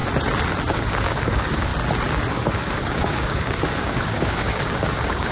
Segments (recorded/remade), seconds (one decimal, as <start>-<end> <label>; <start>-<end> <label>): 0.0-0.7 recorded; 0.7-1.7 remade; 1.7-2.3 recorded; 2.3-5.3 remade